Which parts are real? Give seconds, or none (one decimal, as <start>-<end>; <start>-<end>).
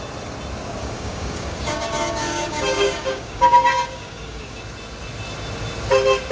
0.0-0.8; 4.6-6.3